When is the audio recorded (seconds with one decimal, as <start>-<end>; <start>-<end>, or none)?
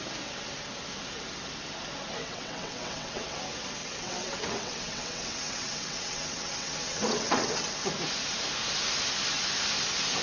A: 0.0-2.2; 3.4-3.8; 7.7-10.2